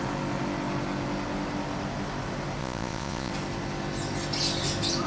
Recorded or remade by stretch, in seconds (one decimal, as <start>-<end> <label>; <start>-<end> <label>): 0.0-2.6 recorded; 2.6-3.3 remade; 3.3-5.1 recorded